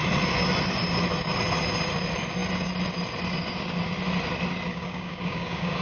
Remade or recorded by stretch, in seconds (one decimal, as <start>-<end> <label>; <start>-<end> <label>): 0.0-4.7 recorded; 4.7-5.8 remade